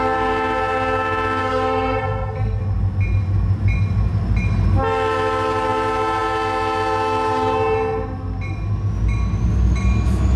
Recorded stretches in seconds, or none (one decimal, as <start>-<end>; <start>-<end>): 0.0-1.4; 2.6-10.4